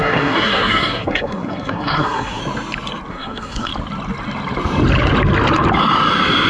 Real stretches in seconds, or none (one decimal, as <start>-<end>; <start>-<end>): 2.4-3.1; 3.7-6.5